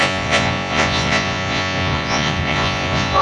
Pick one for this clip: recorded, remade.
remade